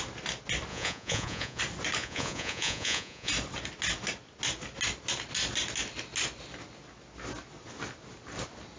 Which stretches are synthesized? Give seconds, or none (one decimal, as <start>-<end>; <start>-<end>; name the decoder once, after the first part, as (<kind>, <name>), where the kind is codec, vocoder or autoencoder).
0.7-1.6 (vocoder, Vocos); 2.0-3.3